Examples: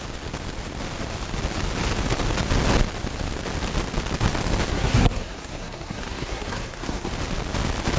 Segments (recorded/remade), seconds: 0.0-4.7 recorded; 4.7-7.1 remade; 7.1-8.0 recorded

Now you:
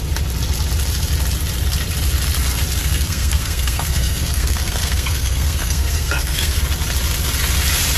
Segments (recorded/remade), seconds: 0.0-2.8 recorded; 2.8-6.6 remade; 6.6-8.0 recorded

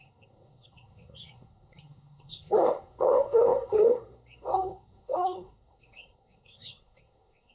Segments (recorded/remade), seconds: 0.0-7.5 remade